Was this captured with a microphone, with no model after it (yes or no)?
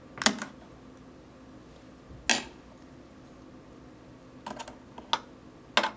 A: yes